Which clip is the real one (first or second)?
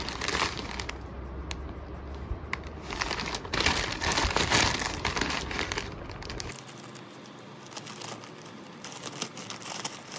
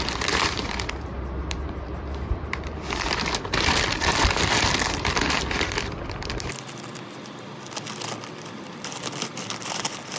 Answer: first